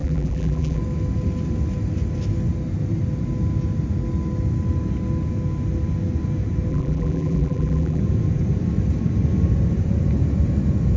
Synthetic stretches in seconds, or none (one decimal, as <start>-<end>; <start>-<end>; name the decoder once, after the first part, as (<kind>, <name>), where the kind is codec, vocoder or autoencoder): 0.0-0.8 (vocoder, BigVGAN v2); 6.7-8.0